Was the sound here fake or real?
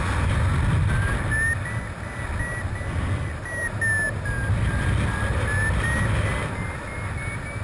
real